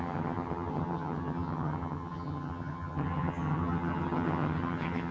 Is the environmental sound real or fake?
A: fake